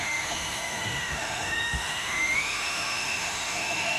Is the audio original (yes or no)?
no